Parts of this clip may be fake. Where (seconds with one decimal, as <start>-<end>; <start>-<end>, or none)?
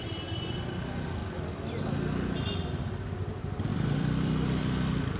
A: 0.0-1.2; 2.8-5.2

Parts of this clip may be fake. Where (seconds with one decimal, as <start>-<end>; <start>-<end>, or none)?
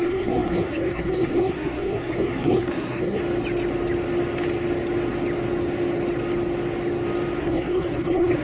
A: 0.0-3.2; 7.4-8.4